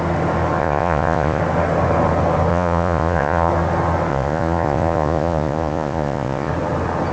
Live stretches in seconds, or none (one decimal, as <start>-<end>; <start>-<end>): 0.0-0.6; 1.4-2.5; 3.5-4.1; 6.5-7.1